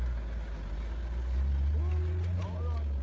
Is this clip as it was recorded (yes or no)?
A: yes